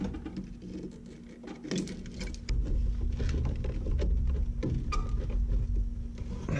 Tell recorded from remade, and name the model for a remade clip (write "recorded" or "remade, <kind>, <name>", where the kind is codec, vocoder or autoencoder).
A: recorded